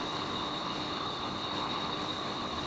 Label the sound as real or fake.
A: fake